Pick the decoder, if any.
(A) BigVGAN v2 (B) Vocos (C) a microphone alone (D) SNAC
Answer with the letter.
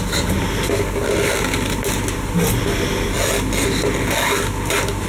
C